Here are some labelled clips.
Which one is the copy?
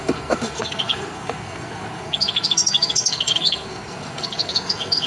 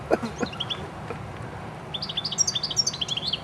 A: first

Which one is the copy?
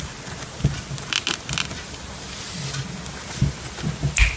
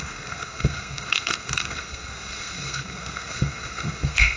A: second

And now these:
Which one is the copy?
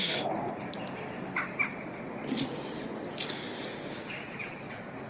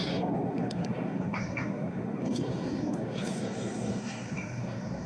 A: second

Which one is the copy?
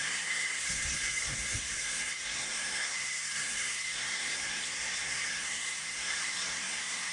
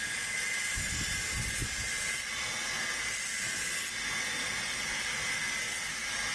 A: first